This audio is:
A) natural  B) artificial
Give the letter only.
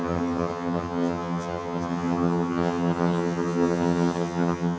B